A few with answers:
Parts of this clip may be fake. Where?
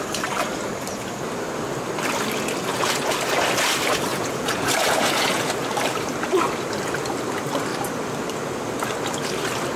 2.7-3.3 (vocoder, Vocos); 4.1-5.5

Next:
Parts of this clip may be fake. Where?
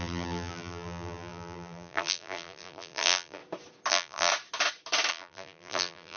0.0-3.4 (vocoder, BigVGAN v2); 3.9-4.3; 5.1-6.2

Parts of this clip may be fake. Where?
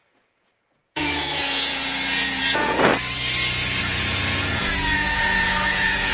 0.0-2.9 (vocoder, Vocos); 3.8-6.1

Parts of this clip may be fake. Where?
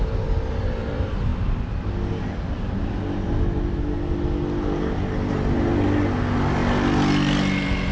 none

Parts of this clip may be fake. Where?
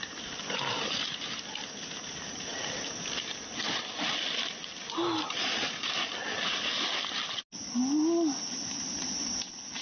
none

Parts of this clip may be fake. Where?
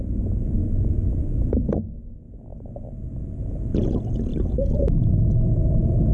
4.3-5.1 (vocoder, BigVGAN v2)